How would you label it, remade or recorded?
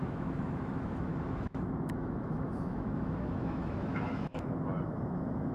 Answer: remade